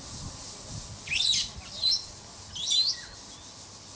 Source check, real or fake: real